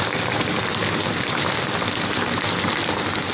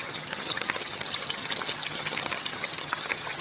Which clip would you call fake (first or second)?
second